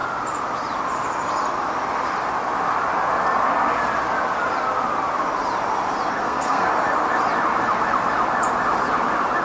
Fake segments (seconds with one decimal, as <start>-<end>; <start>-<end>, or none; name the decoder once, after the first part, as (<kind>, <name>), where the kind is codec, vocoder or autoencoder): 6.2-6.7 (codec, SNAC)

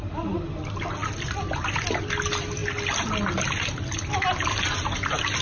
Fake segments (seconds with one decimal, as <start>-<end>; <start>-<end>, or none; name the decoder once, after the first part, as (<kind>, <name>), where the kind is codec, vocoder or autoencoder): none

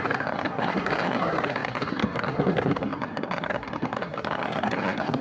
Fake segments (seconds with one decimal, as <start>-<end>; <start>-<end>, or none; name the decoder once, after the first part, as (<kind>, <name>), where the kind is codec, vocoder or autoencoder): 0.0-5.2 (codec, SNAC)

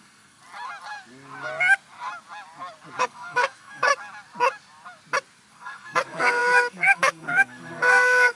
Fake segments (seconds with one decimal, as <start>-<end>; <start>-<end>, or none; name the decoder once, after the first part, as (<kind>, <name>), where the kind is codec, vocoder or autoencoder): 0.0-0.4 (codec, SNAC); 3.0-3.9; 5.5-8.4

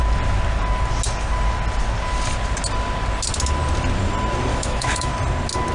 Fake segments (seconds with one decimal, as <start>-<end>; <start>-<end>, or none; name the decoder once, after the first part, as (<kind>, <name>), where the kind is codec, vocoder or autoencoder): 4.5-5.1 (autoencoder, DAC-VAE)

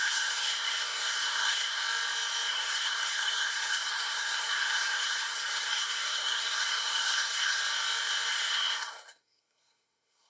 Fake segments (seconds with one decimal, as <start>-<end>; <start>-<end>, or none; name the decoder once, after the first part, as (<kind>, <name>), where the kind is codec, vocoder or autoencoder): 0.0-1.8 (codec, SNAC); 2.5-7.6; 8.3-10.3

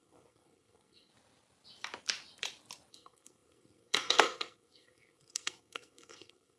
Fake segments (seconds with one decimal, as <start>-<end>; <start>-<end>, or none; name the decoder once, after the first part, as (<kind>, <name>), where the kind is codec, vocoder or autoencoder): 0.0-1.1 (codec, SNAC); 2.9-6.6